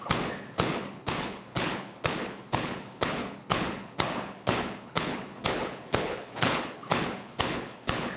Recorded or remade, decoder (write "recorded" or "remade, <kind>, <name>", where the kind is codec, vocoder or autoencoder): remade, codec, HILCodec